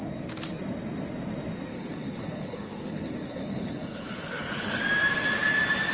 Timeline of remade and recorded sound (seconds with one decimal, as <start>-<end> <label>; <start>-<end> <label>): 0.0-1.7 recorded; 1.7-4.8 remade; 4.8-5.9 recorded